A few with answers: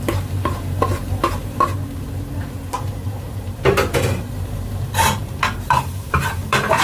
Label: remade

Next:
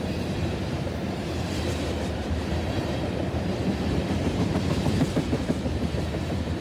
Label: remade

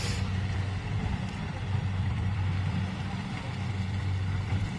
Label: remade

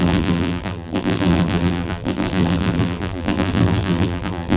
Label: remade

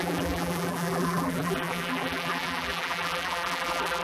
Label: remade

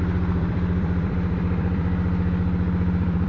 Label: remade